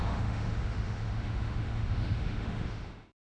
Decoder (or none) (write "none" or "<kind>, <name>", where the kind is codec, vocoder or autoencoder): autoencoder, DAC-VAE